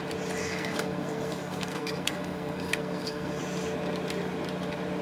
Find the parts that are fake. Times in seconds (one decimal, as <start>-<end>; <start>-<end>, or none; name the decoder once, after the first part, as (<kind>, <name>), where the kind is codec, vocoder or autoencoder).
0.4-3.4 (codec, SNAC)